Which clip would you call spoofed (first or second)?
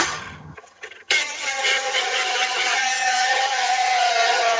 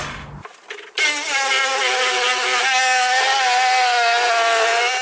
first